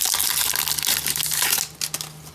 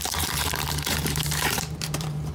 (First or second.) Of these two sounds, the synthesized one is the second